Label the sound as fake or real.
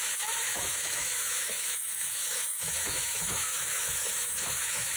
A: fake